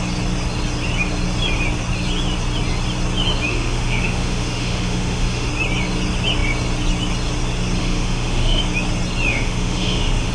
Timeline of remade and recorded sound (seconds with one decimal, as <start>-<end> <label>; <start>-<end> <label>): 0.0-3.5 recorded; 3.5-5.5 remade; 5.5-7.8 recorded; 7.8-8.6 remade; 8.6-9.3 recorded; 9.3-10.3 remade